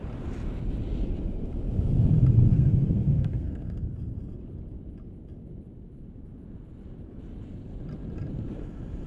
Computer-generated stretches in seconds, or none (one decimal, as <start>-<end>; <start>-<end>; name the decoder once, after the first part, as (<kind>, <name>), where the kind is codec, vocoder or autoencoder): 2.5-3.8 (codec, SNAC)